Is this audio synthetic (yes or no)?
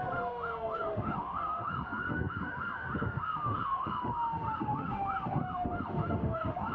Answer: yes